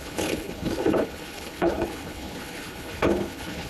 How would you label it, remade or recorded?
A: remade